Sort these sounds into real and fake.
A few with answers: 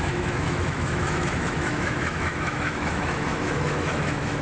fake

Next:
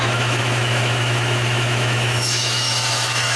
fake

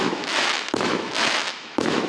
fake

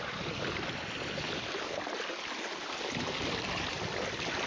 real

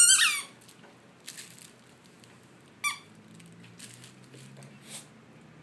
real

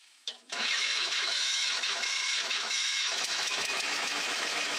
fake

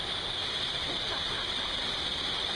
real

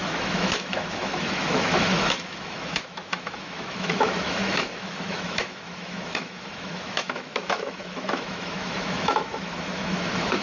fake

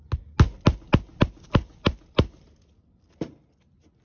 real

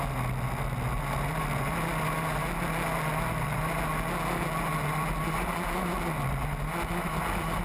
real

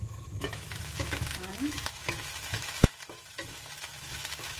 fake